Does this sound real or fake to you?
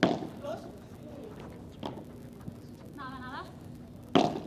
real